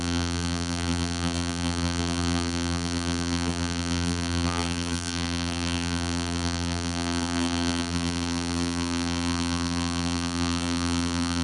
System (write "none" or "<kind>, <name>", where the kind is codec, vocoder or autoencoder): vocoder, BigVGAN v2